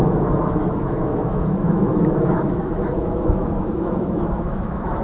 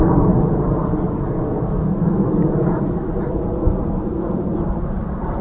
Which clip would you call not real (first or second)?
first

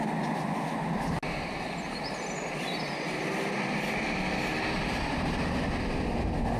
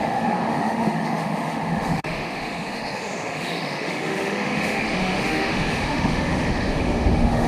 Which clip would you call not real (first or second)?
second